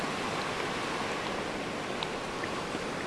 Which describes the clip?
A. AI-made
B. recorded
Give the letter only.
B